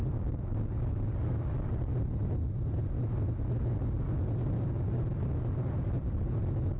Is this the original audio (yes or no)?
yes